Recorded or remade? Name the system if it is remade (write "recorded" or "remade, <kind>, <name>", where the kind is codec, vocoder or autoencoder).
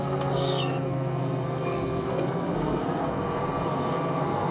remade, codec, SNAC